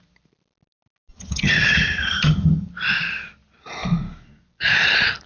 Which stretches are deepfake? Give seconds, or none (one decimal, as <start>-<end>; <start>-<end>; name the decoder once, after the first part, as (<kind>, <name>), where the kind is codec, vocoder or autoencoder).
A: 1.1-2.7 (vocoder, HiFi-GAN)